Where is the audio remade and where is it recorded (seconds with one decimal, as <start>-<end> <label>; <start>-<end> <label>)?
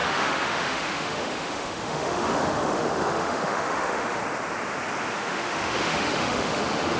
0.0-4.2 remade; 4.2-5.1 recorded; 5.1-7.0 remade